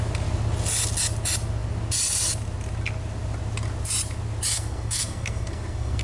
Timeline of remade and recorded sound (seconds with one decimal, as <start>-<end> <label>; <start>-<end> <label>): 0.0-4.5 recorded; 4.5-6.0 remade